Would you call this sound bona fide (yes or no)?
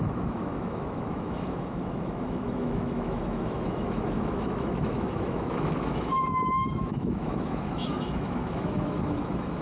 no